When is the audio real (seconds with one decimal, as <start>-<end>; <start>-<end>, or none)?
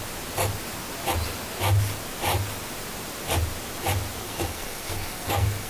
0.0-4.2